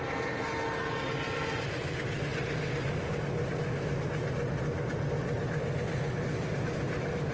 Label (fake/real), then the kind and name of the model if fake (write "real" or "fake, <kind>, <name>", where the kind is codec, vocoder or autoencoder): real